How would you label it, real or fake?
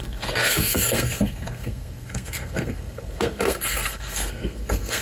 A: fake